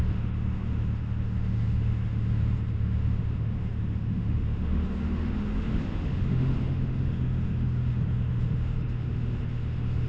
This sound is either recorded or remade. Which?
remade